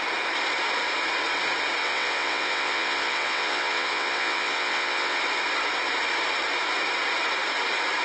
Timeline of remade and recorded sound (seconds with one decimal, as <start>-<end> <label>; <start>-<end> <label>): 0.0-1.8 recorded; 1.8-5.2 remade; 5.2-8.0 recorded

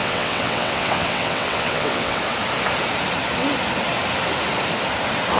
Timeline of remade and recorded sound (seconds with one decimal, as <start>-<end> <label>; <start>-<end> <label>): 0.0-2.2 remade; 2.2-5.4 recorded

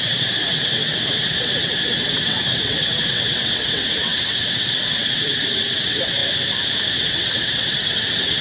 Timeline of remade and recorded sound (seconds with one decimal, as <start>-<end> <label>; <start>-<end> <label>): 0.0-6.2 remade; 6.2-6.9 recorded; 6.9-8.4 remade

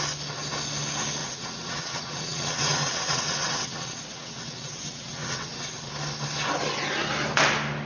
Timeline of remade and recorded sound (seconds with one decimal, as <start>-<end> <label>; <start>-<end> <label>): 0.0-1.2 recorded; 1.2-5.9 remade; 5.9-7.9 recorded

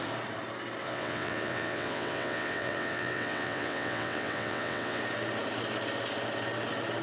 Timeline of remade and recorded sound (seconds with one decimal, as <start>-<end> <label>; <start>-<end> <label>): 0.0-0.8 recorded; 0.8-5.0 remade; 5.0-7.0 recorded

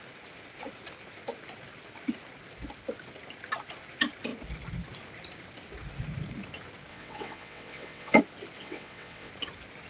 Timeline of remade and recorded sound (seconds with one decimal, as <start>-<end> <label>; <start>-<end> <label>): 0.0-6.9 recorded; 6.9-8.2 remade; 8.2-8.6 recorded; 8.6-9.3 remade; 9.3-9.9 recorded

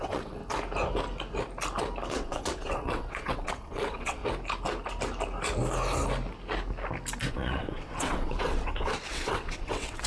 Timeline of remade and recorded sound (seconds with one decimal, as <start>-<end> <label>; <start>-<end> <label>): 0.0-0.4 remade; 0.4-2.1 recorded; 2.1-4.2 remade; 4.2-7.3 recorded; 7.3-10.1 remade

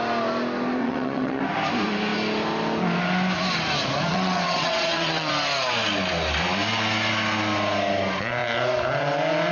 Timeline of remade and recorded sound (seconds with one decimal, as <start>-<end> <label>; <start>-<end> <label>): 0.0-0.8 recorded; 0.8-1.4 remade; 1.4-4.1 recorded; 4.1-5.3 remade; 5.3-9.5 recorded